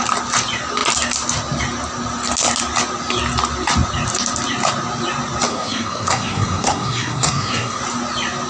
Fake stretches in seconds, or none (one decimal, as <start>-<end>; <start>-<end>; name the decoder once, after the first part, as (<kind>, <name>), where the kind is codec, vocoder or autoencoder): 5.5-7.8 (codec, SNAC)